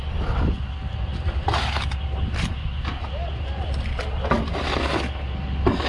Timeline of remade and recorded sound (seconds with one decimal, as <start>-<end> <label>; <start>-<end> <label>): 0.0-5.9 recorded